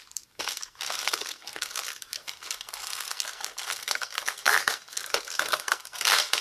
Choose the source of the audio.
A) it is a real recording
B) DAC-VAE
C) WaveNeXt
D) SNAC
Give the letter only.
D